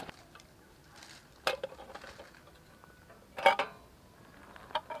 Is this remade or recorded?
recorded